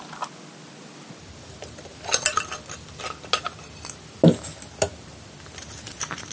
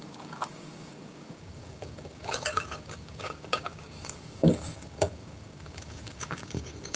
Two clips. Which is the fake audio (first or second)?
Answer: second